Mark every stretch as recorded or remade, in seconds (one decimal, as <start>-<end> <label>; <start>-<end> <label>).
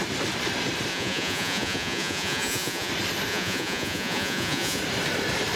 0.0-0.9 recorded; 0.9-2.9 remade; 2.9-3.3 recorded; 3.3-4.8 remade; 4.8-5.6 recorded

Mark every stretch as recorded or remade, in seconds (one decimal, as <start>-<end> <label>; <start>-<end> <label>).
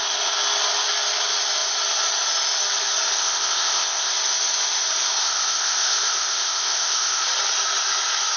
0.0-3.1 recorded; 3.1-4.1 remade; 4.1-5.2 recorded; 5.2-7.2 remade; 7.2-8.4 recorded